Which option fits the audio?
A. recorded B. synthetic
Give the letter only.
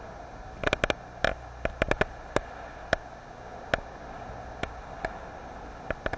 A